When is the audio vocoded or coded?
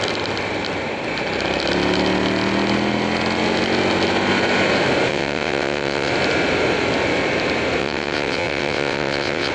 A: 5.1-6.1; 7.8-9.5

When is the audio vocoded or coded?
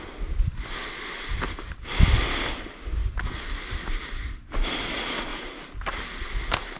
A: none